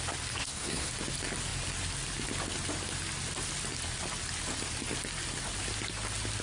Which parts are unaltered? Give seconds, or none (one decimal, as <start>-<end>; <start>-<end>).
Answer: 0.0-0.4; 0.9-6.4